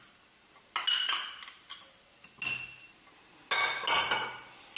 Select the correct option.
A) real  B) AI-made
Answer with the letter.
A